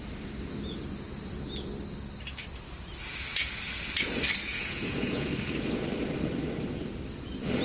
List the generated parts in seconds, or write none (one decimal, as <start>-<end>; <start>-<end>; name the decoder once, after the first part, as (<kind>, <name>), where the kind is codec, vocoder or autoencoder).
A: 4.5-5.4 (vocoder, Vocos)

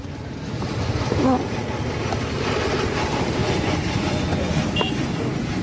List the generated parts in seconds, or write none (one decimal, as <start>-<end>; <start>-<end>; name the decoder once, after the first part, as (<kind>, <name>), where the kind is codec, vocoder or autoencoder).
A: 3.4-4.6 (vocoder, Vocos)

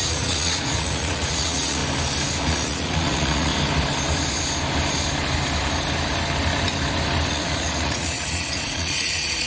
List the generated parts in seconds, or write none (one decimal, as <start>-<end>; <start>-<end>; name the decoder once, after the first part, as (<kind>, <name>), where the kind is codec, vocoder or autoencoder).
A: 0.0-1.8 (vocoder, Vocos); 2.4-3.5; 7.3-9.5

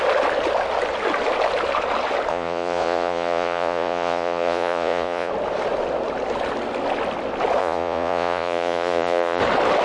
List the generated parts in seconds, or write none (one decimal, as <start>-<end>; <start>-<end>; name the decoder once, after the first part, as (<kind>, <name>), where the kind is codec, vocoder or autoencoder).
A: 2.3-5.3 (vocoder, Vocos); 7.6-9.4

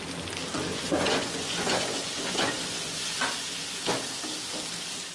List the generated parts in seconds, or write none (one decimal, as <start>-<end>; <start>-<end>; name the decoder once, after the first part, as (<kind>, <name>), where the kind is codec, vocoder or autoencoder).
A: 0.7-3.8 (vocoder, Vocos)

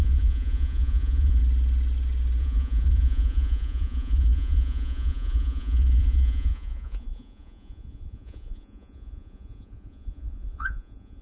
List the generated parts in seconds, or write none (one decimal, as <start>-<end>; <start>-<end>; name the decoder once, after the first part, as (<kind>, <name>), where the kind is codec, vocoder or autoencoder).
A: 0.0-1.4 (vocoder, Vocos); 2.4-11.2

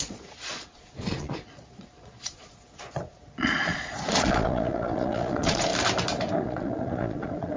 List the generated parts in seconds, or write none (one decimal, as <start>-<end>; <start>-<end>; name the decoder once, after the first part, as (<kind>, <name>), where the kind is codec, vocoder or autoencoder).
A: 0.0-5.7 (vocoder, Vocos); 6.3-7.6